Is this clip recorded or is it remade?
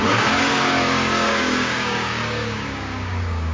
remade